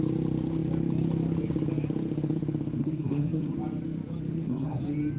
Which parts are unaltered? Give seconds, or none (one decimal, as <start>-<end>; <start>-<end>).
0.0-2.8; 3.5-4.3; 4.8-5.2